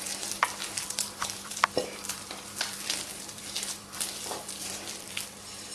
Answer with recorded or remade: remade